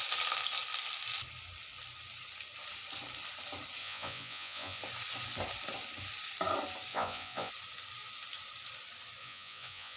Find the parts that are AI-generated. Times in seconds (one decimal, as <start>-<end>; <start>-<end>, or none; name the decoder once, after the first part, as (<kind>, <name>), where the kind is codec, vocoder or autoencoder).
3.8-4.8 (vocoder, Vocos); 6.9-7.5; 9.2-10.0